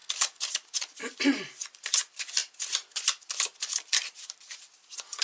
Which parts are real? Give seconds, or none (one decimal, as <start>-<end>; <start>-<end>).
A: 1.9-2.4